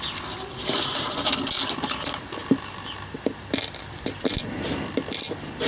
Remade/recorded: recorded